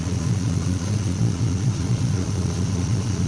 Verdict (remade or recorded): remade